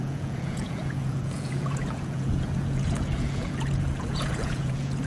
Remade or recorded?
remade